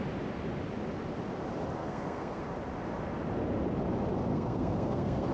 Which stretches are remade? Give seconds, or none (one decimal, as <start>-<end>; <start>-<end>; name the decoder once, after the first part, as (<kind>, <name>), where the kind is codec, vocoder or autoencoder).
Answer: 1.8-2.4 (codec, SNAC); 4.3-5.3